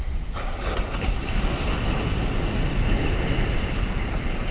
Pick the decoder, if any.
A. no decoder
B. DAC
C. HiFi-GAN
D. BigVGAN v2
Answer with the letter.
A